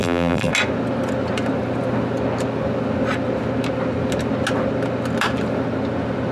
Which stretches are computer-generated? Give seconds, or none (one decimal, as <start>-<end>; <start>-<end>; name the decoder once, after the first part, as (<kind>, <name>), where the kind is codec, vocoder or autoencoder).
0.0-0.5 (vocoder, BigVGAN v2)